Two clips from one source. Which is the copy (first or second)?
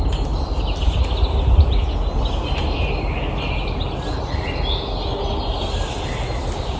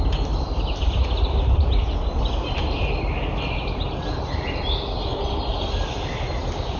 second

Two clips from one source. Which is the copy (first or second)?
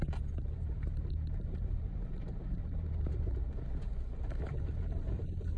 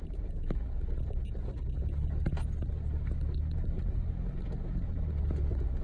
first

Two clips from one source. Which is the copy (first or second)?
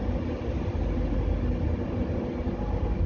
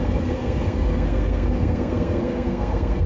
second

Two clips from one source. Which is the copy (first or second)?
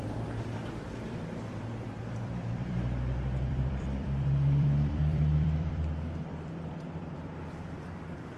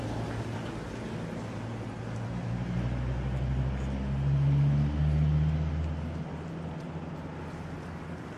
first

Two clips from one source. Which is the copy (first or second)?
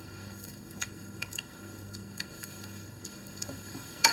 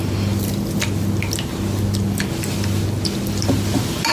first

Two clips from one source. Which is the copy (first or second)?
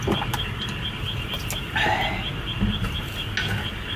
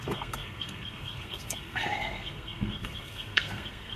second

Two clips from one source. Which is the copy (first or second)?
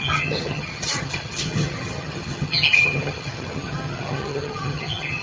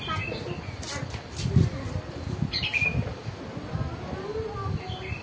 first